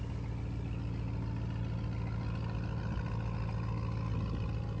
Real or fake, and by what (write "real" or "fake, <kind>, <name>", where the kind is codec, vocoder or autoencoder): real